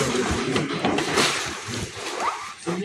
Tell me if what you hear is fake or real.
fake